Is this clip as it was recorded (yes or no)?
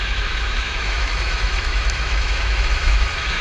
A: no